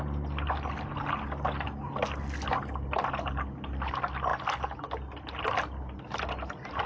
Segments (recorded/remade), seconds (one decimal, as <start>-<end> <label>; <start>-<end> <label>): 0.0-6.9 recorded